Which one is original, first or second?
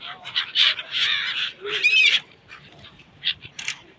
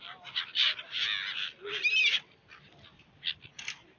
second